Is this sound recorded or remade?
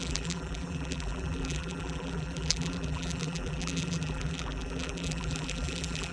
remade